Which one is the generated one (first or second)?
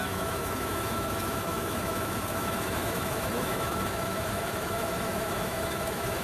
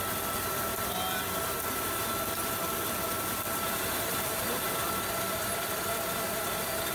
first